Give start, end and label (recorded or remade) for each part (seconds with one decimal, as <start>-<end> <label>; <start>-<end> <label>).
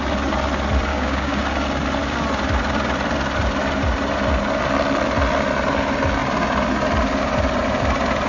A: 0.0-0.9 recorded; 0.9-1.4 remade; 1.4-8.3 recorded